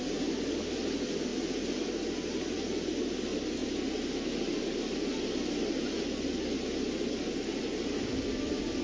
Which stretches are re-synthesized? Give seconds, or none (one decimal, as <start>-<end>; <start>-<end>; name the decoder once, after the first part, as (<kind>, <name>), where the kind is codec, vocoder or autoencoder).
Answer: none